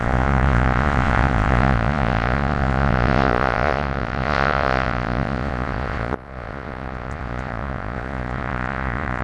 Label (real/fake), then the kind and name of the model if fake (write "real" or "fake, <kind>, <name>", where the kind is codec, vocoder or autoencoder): fake, vocoder, Vocos